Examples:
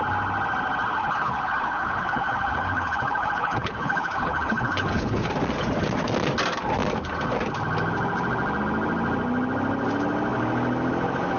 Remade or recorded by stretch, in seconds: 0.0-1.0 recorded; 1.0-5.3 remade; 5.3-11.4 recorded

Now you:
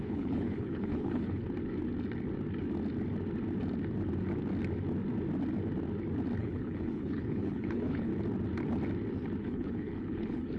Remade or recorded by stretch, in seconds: 0.0-1.4 remade; 1.4-6.4 recorded; 6.4-8.1 remade; 8.1-9.4 recorded; 9.4-10.6 remade